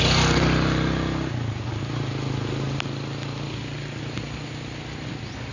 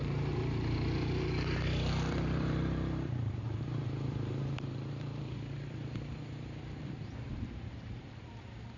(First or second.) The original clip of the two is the first